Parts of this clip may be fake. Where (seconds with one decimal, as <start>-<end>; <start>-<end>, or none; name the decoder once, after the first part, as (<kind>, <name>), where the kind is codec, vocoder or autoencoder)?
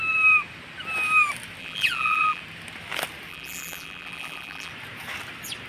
1.6-2.4 (vocoder, BigVGAN v2); 3.3-4.7